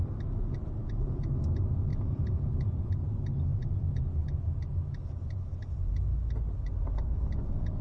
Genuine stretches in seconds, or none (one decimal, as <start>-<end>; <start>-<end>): 0.0-0.8; 1.4-1.9; 2.9-3.5; 4.2-7.8